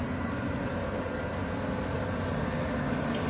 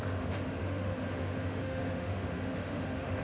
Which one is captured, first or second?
first